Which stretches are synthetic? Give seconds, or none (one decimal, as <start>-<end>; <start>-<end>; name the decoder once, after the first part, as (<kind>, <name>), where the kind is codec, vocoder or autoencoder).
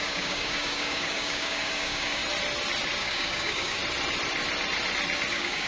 0.0-2.2 (codec, DAC); 3.0-3.8; 5.3-5.7